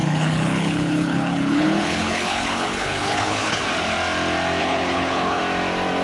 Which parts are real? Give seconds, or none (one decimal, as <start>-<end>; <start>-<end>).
3.6-4.6; 5.4-6.0